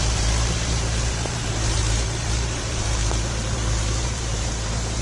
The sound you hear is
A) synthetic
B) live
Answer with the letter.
A